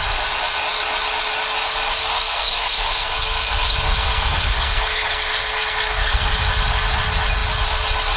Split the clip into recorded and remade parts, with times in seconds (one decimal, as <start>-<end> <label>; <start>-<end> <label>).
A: 0.0-2.0 recorded; 2.0-6.4 remade; 6.4-8.2 recorded